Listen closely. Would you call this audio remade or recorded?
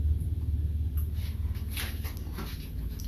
recorded